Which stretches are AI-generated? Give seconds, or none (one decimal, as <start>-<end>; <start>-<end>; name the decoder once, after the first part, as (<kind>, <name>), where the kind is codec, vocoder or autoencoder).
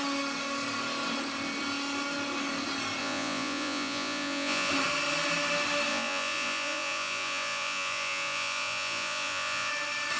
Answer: 3.0-4.7 (vocoder, Vocos); 5.9-9.7